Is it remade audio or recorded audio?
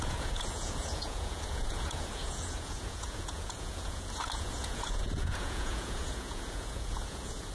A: remade